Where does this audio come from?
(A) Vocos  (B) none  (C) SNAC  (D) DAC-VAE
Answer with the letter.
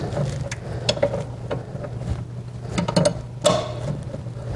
B